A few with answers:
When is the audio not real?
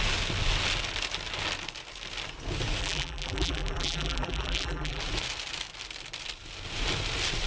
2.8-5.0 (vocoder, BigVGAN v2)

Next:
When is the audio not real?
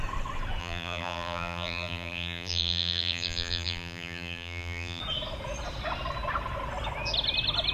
0.6-5.0 (vocoder, BigVGAN v2)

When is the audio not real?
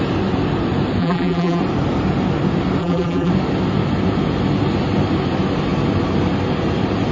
1.0-1.6 (vocoder, BigVGAN v2); 2.8-3.3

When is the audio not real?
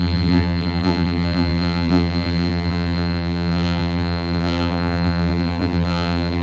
0.0-6.4 (vocoder, BigVGAN v2)